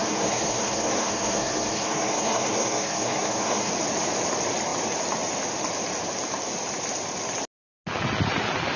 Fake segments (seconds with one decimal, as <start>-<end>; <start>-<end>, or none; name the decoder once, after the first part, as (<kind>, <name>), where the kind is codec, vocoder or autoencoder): 0.0-3.7 (codec, SNAC)